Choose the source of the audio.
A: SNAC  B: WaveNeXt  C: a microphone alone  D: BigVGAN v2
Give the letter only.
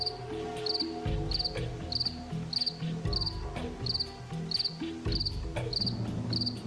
C